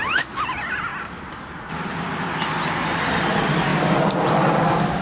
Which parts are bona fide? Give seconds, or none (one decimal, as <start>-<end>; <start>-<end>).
3.7-4.3

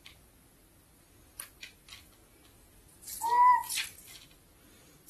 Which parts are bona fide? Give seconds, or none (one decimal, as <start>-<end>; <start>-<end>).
0.0-5.1

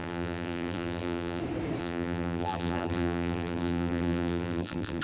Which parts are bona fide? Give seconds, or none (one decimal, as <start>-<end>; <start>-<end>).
1.4-1.8

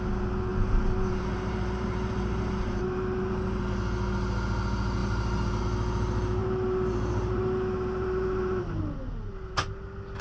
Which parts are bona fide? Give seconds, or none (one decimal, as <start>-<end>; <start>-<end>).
0.0-0.5; 3.6-5.0; 5.6-6.4; 8.8-10.2

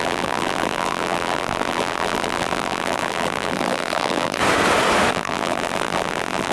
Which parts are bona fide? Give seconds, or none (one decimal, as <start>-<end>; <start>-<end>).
4.4-5.1

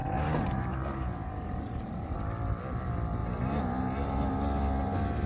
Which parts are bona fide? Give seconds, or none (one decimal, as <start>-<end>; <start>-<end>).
1.6-3.2; 4.3-5.3

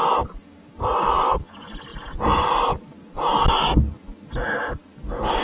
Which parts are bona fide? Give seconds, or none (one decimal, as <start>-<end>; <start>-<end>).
0.0-1.9; 2.5-5.4

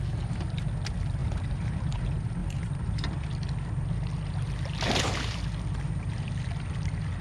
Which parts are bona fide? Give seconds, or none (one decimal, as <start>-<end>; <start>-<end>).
0.0-1.2; 2.0-2.4; 3.0-7.2